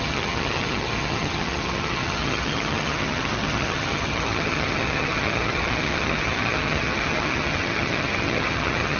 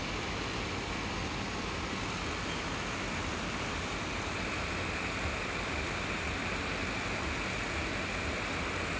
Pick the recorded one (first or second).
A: second